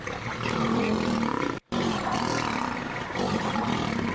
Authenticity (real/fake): real